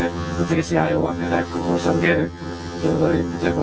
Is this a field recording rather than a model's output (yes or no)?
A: no